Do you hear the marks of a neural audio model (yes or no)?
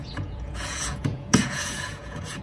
yes